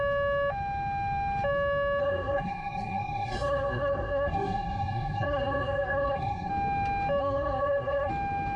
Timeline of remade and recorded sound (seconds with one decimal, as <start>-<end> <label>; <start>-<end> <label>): 0.0-2.0 recorded; 2.0-6.5 remade; 6.5-7.2 recorded; 7.2-8.1 remade; 8.1-8.6 recorded